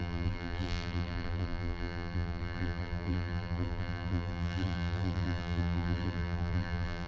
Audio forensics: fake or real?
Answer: fake